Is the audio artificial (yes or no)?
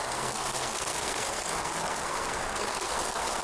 yes